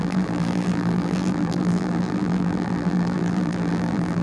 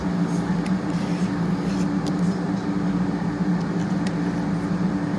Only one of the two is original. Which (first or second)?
second